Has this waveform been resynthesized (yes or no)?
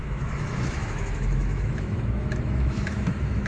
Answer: yes